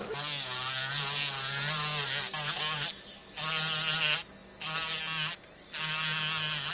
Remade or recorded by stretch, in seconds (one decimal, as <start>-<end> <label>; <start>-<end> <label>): 0.0-6.7 recorded